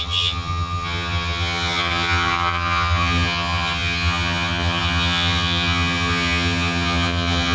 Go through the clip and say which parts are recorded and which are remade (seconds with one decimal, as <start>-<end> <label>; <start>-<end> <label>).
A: 0.0-7.5 remade